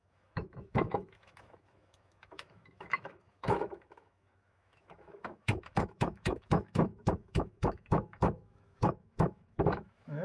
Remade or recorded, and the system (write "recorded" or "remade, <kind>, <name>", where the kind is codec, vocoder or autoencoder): remade, autoencoder, DAC-VAE